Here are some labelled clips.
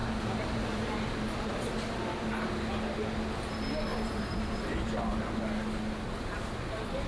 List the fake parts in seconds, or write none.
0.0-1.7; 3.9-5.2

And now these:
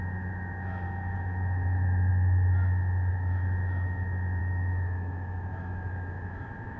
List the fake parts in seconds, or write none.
0.0-2.1; 3.1-6.8